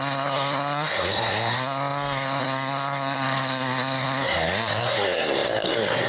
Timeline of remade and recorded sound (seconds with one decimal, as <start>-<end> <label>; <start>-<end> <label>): 0.0-6.1 remade